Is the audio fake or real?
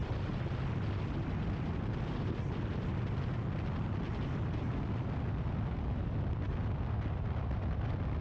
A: real